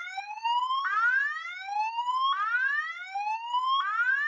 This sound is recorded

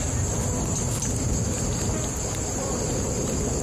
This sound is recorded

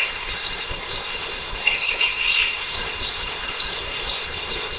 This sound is remade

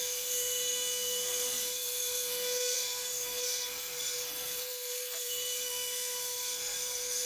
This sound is remade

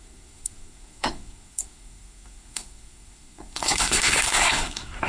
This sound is remade